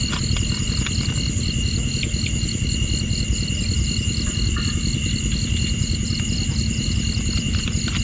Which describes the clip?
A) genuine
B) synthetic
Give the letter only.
A